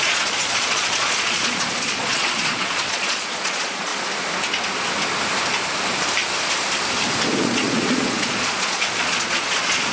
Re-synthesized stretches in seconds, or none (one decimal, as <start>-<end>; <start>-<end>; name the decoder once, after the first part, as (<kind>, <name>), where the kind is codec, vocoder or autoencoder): 0.0-3.9 (vocoder, Vocos); 7.4-9.9